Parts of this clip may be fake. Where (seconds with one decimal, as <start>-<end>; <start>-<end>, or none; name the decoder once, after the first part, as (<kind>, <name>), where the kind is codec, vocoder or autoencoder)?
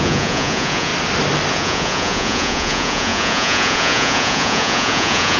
0.0-0.9 (vocoder, Vocos); 1.5-5.4